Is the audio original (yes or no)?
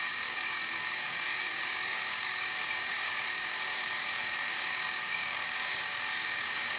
no